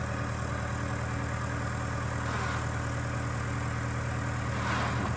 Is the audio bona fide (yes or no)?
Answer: yes